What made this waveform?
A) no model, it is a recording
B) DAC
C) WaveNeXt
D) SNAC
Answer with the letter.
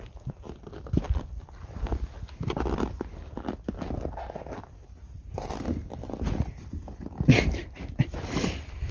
A